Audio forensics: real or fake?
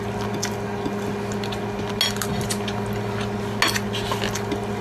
real